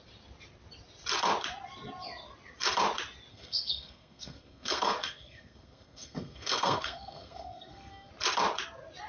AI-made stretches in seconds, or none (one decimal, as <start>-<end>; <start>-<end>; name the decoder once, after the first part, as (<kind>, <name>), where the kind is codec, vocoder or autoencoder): 3.3-8.1 (codec, SNAC)